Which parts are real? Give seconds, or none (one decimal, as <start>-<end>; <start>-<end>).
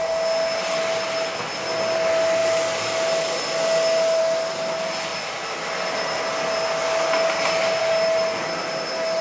0.0-9.2